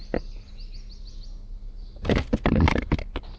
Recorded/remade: recorded